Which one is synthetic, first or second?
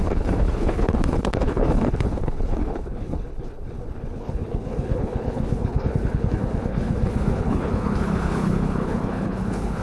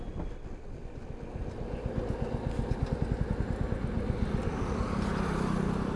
first